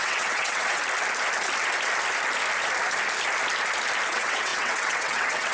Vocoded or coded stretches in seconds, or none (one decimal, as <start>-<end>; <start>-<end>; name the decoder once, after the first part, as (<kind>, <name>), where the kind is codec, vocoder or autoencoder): 0.0-0.8 (vocoder, WaveNeXt); 4.1-5.5